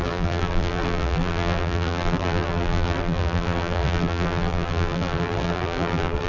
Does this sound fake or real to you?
fake